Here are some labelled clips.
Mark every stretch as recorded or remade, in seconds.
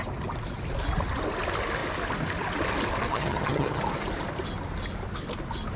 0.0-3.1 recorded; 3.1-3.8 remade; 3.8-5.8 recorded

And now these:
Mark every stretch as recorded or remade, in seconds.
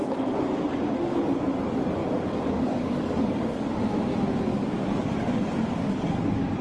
0.0-2.0 recorded; 2.0-3.8 remade; 3.8-4.5 recorded; 4.5-6.0 remade; 6.0-6.6 recorded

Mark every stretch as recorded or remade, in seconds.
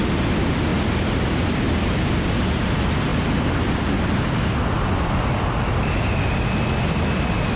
0.0-0.7 recorded; 0.7-2.1 remade; 2.1-3.1 recorded; 3.1-5.7 remade; 5.7-7.6 recorded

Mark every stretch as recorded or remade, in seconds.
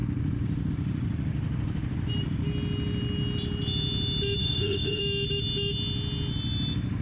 0.0-4.4 recorded; 4.4-5.0 remade; 5.0-7.0 recorded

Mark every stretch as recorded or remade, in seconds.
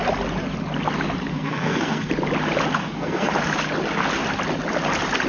0.0-1.3 recorded; 1.3-2.1 remade; 2.1-2.8 recorded; 2.8-3.3 remade; 3.3-5.3 recorded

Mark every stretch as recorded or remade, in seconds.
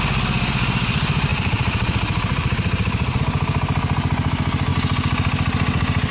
0.0-1.3 recorded; 1.3-3.2 remade; 3.2-6.1 recorded